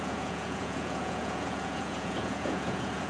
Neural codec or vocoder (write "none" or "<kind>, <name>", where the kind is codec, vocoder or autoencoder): vocoder, Vocos